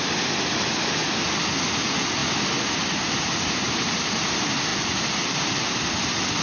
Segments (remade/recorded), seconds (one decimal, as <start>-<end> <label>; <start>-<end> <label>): 0.0-4.7 recorded; 4.7-6.0 remade; 6.0-6.4 recorded